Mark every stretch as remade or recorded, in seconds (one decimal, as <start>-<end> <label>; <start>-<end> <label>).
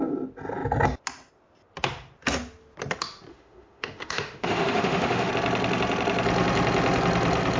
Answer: 0.0-3.3 recorded; 3.3-5.3 remade; 5.3-7.6 recorded